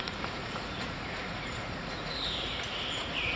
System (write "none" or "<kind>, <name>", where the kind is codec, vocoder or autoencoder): vocoder, Vocos